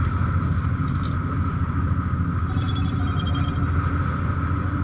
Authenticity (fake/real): real